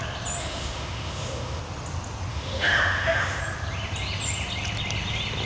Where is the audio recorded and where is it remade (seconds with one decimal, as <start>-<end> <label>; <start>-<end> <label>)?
0.0-0.4 recorded; 0.4-1.6 remade; 1.6-2.3 recorded; 2.3-3.4 remade; 3.4-5.5 recorded